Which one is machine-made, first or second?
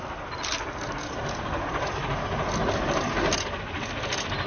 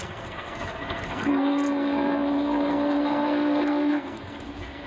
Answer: second